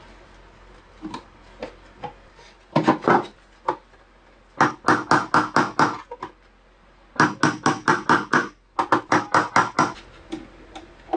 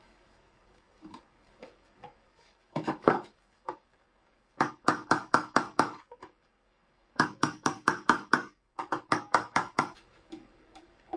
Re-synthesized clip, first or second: second